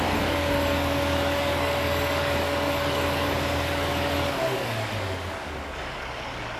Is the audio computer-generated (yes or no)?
yes